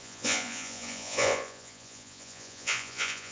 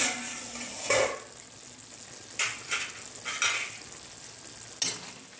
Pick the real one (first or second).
second